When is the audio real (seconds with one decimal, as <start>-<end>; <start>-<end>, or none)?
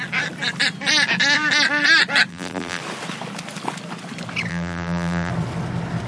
0.0-2.3; 2.8-4.5; 5.3-6.1